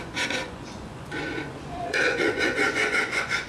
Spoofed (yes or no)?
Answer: yes